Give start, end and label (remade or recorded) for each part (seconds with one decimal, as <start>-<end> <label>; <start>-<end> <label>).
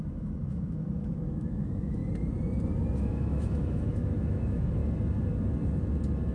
0.0-2.0 remade; 2.0-3.0 recorded; 3.0-4.8 remade; 4.8-6.3 recorded